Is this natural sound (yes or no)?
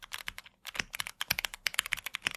yes